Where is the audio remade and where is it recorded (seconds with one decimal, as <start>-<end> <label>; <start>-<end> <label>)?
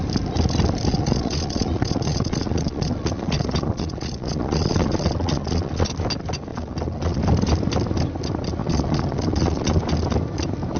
0.0-0.9 recorded; 0.9-5.9 remade; 5.9-6.5 recorded; 6.5-7.2 remade; 7.2-8.6 recorded; 8.6-9.8 remade; 9.8-10.8 recorded